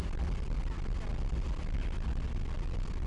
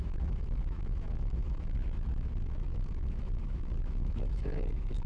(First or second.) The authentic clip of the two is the first